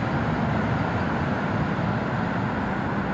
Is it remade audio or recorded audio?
recorded